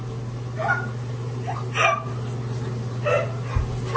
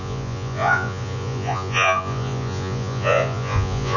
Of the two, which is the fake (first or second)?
second